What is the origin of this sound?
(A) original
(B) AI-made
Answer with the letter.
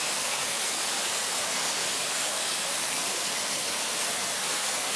B